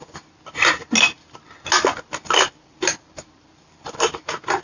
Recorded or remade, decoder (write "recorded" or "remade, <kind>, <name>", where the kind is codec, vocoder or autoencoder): recorded